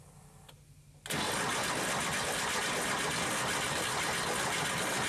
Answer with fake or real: real